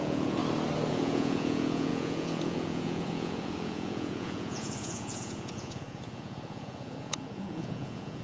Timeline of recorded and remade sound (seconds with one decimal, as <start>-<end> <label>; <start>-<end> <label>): 0.0-0.4 remade; 0.4-0.9 recorded; 0.9-8.2 remade